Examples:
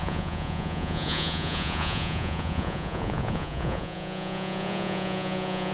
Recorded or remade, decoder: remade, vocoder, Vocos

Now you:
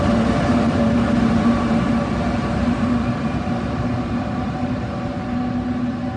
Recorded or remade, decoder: remade, vocoder, BigVGAN v2